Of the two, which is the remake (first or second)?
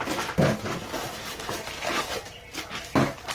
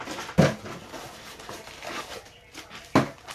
first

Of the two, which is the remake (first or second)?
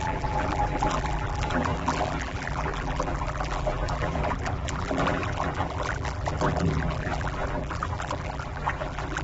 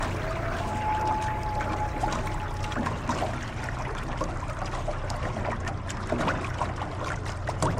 first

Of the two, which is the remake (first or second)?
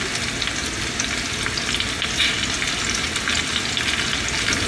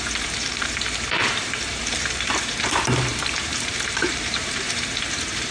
second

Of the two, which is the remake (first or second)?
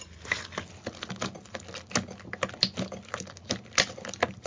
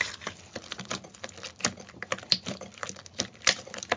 second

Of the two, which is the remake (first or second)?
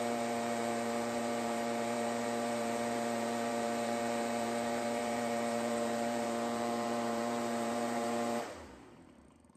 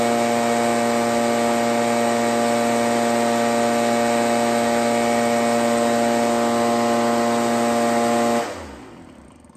first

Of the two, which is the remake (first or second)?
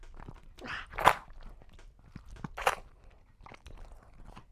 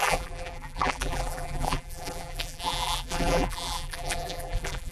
second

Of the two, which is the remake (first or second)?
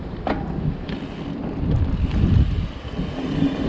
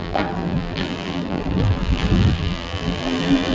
second